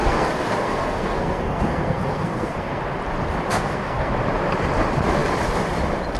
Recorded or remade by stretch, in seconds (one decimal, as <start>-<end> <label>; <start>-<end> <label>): 0.0-2.8 remade; 2.8-3.5 recorded; 3.5-4.1 remade; 4.1-6.2 recorded